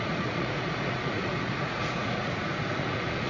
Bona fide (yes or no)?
no